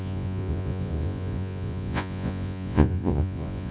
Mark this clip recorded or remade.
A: remade